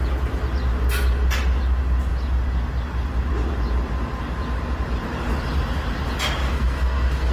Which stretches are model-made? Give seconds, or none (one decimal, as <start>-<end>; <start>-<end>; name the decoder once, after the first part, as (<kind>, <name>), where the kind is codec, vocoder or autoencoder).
6.4-7.3 (codec, SNAC)